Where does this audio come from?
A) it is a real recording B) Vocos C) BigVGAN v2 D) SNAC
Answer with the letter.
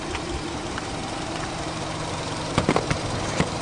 C